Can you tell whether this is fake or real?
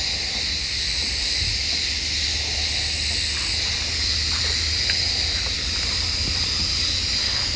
real